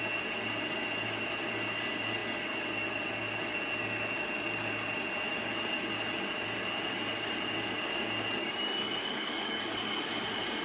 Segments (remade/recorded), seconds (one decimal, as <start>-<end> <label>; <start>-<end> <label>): 0.0-8.4 recorded; 8.4-10.1 remade; 10.1-10.6 recorded